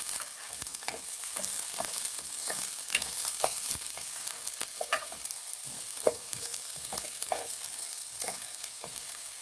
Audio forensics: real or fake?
fake